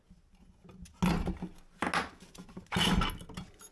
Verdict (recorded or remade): recorded